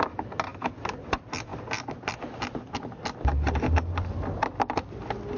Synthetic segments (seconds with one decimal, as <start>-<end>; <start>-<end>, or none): none